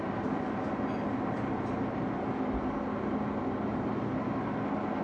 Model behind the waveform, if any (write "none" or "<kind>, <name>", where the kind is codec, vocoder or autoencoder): none